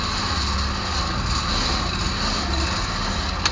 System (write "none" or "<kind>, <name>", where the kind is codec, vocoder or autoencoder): none